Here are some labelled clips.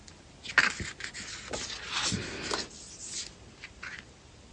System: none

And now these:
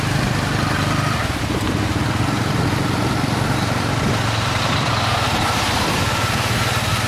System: none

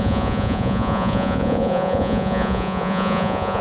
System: vocoder, Vocos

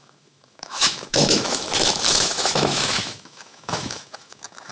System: autoencoder, DAC-VAE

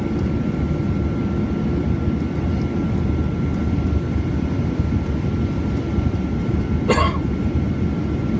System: none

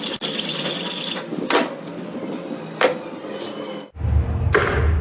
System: none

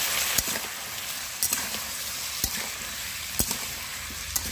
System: none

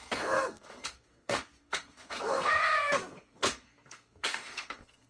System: codec, SNAC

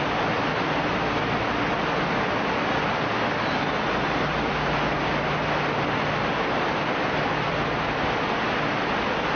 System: none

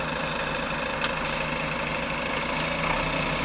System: none